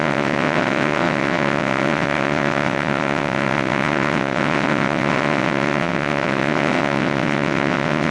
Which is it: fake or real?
fake